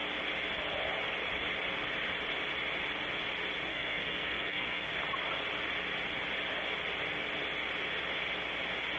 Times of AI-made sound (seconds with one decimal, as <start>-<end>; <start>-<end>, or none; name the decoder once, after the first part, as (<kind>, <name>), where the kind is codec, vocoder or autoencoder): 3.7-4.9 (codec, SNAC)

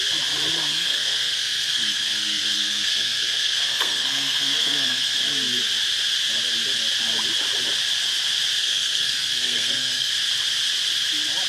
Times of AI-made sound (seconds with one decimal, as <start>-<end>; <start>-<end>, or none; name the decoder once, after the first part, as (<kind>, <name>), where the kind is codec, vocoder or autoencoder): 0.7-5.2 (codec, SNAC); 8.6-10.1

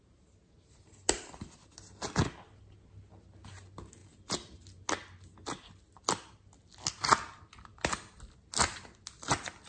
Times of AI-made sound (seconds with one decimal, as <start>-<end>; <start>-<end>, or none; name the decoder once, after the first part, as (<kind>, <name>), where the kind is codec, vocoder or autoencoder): none